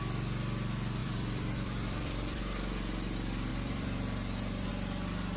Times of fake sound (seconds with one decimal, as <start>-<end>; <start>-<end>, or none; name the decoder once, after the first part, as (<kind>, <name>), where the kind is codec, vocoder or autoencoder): 1.0-2.4 (vocoder, BigVGAN v2); 3.5-4.7